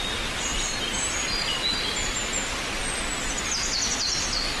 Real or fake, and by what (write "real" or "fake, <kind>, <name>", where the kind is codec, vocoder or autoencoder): real